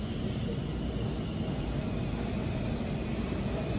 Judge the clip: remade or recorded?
recorded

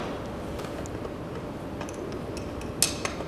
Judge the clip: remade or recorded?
recorded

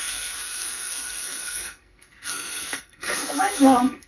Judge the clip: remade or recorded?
remade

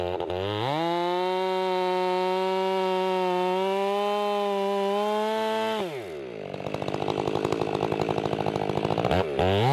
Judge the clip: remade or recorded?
recorded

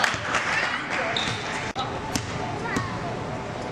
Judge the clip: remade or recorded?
recorded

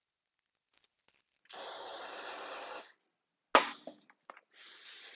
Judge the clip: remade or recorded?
recorded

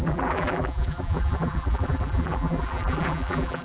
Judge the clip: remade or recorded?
remade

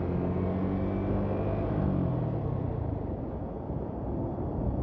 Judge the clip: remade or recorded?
recorded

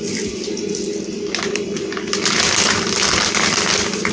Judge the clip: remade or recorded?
recorded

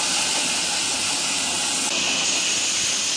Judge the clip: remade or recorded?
recorded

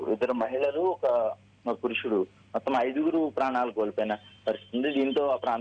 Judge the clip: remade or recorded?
recorded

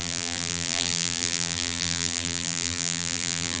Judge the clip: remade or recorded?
remade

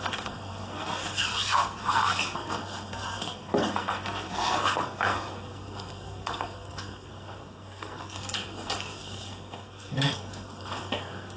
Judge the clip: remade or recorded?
remade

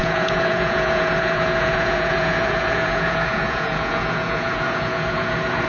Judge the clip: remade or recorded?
remade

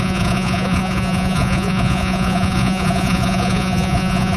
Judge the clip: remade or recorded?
remade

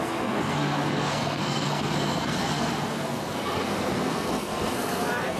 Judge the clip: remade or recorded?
remade